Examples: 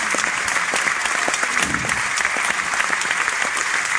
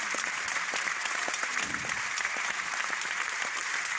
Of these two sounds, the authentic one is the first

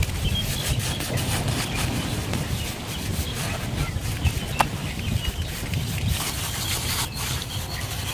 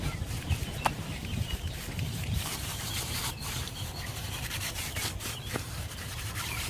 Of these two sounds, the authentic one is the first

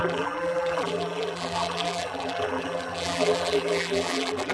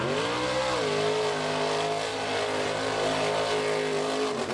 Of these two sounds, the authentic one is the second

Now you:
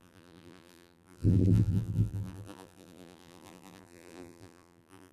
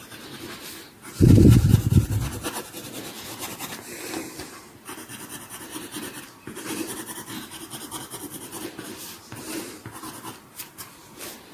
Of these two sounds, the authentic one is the second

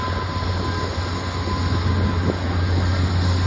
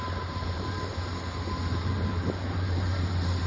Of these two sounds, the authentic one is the first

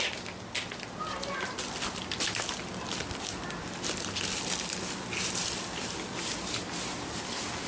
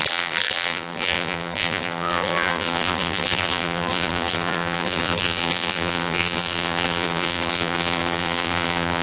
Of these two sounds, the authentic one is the first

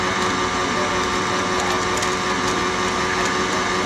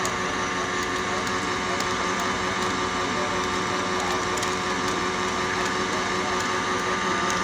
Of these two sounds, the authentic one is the first